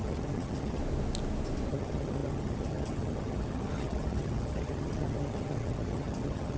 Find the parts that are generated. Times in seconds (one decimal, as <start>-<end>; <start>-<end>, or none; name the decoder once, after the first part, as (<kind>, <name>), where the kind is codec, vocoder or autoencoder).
0.0-0.8 (vocoder, HiFi-GAN); 1.7-6.6

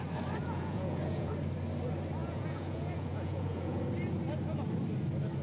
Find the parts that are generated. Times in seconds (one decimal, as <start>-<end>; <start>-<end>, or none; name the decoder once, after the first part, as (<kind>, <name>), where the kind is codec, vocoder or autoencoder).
0.4-1.3 (vocoder, Vocos); 2.2-3.8

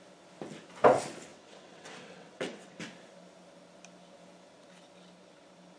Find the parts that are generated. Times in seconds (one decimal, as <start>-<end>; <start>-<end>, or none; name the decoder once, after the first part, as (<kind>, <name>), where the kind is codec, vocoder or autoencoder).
1.3-2.8 (vocoder, WaveNeXt)

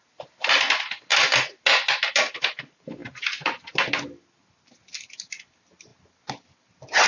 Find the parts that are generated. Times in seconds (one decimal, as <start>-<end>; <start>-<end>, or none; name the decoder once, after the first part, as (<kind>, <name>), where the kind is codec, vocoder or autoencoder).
none

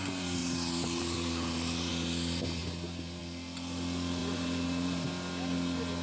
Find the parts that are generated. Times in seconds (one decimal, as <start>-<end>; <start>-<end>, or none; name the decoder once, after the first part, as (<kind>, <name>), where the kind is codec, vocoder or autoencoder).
0.4-1.9 (vocoder, BigVGAN v2); 2.6-3.2; 4.2-5.1

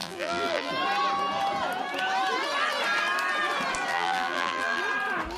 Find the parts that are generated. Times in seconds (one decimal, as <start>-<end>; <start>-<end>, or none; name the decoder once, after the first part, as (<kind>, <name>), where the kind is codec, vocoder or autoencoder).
0.0-0.7 (vocoder, BigVGAN v2); 3.9-4.8

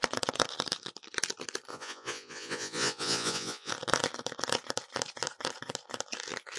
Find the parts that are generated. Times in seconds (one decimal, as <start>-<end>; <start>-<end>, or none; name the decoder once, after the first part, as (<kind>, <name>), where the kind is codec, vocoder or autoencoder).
1.7-3.7 (vocoder, Vocos)

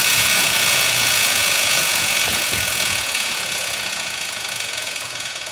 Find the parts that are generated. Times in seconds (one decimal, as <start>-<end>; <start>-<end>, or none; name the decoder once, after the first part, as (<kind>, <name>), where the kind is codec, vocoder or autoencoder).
0.0-5.5 (vocoder, Vocos)